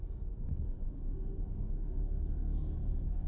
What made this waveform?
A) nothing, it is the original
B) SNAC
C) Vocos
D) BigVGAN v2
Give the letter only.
B